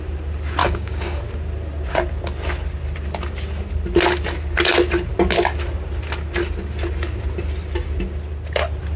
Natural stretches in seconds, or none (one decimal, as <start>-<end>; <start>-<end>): 0.0-0.6; 1.2-9.0